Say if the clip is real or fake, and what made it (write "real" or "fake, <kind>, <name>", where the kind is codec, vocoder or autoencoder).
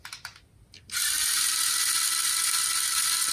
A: real